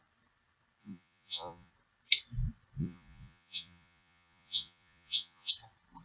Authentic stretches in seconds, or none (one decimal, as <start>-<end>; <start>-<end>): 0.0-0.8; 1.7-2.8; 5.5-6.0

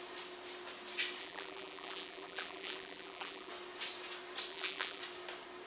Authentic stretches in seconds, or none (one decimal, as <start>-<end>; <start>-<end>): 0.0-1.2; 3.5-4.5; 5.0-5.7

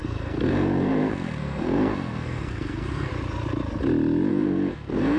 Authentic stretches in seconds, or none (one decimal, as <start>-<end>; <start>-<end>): 3.1-4.3

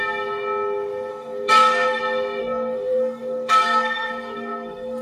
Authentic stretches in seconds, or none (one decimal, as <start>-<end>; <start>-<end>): 0.0-1.1; 2.0-2.4

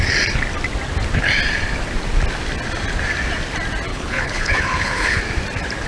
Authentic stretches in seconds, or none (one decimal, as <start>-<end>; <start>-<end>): 0.0-3.9; 5.2-5.9